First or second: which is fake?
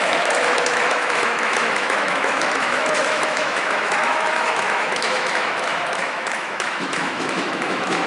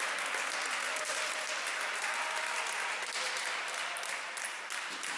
first